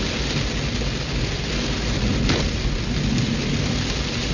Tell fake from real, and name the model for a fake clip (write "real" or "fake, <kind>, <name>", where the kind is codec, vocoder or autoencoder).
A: real